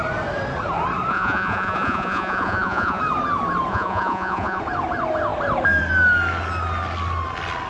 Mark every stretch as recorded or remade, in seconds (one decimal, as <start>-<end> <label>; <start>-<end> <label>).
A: 0.0-1.1 recorded; 1.1-3.0 remade; 3.0-3.7 recorded; 3.7-4.6 remade; 4.6-7.7 recorded

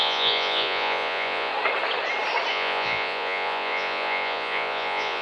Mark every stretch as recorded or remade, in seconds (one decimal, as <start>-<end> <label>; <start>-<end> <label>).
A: 0.0-1.5 remade; 1.5-2.5 recorded; 2.5-5.2 remade